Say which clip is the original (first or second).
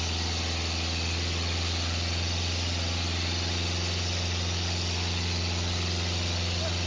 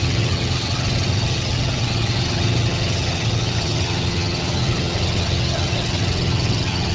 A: first